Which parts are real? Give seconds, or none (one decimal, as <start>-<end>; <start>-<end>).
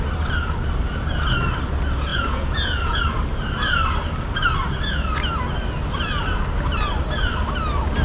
0.0-2.1; 3.0-8.0